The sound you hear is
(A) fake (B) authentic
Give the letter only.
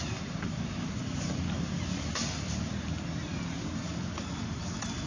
B